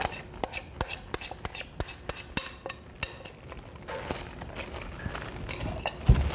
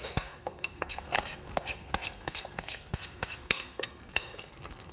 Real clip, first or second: first